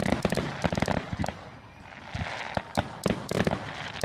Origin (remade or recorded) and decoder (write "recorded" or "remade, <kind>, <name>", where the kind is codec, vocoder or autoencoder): recorded